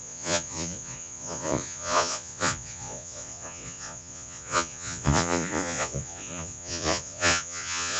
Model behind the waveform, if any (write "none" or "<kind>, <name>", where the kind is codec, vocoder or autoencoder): vocoder, Vocos